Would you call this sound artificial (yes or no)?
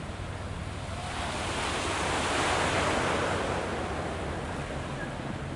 no